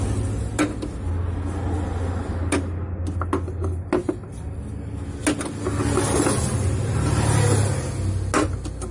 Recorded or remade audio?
recorded